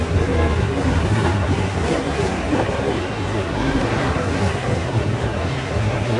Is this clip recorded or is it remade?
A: remade